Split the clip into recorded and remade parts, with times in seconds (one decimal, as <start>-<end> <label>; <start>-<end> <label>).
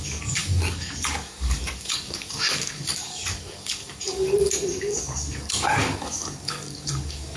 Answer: 0.0-7.4 remade